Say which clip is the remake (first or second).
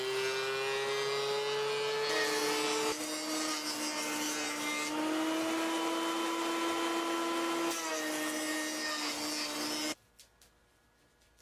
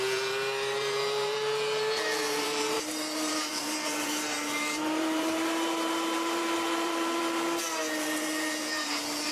second